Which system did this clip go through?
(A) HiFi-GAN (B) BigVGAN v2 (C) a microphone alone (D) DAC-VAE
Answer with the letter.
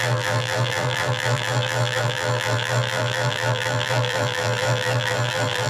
B